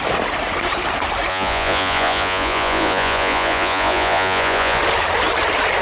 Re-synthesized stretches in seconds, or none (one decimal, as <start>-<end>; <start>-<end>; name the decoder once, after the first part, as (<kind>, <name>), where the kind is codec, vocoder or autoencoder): 1.3-4.8 (vocoder, Vocos)